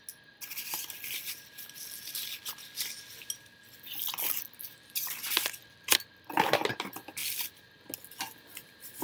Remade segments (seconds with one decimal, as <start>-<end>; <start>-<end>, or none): 7.2-7.7